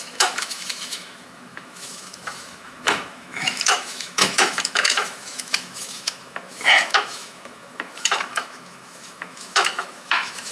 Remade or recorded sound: remade